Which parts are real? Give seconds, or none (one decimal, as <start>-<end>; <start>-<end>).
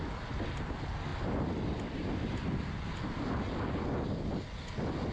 0.0-5.1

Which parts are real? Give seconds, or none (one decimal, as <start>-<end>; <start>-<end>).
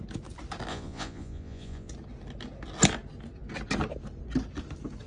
0.0-0.7; 1.9-5.1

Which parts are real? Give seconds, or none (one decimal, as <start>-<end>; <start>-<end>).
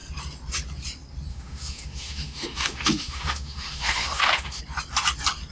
0.0-1.3; 4.6-5.5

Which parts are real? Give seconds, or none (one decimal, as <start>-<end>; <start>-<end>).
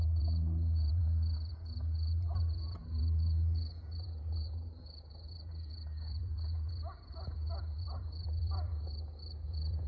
none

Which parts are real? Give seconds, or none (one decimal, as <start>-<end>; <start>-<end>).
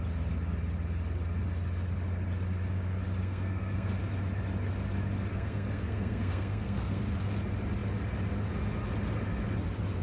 0.0-3.2; 3.9-5.3; 7.0-10.0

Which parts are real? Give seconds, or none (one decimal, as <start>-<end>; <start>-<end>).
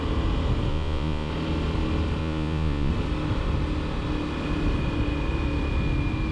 0.0-0.7; 1.3-2.2; 2.9-6.3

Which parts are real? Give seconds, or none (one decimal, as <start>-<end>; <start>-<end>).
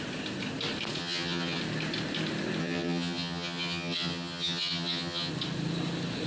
0.0-1.0; 1.6-2.6; 5.3-6.3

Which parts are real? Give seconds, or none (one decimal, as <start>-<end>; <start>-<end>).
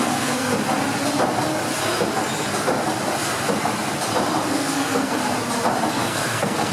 0.5-4.5; 5.2-5.9